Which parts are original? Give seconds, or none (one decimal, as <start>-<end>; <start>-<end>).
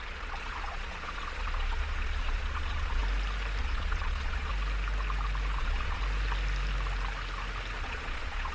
3.0-3.6; 4.5-5.6; 6.0-7.8